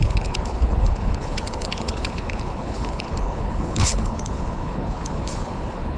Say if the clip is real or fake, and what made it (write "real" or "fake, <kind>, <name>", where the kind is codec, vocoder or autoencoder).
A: fake, codec, HILCodec